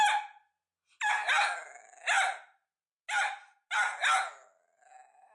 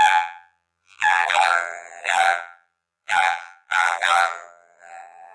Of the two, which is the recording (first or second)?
first